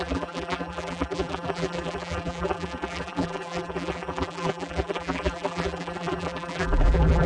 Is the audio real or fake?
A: fake